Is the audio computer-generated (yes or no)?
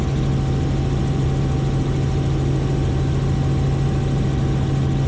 no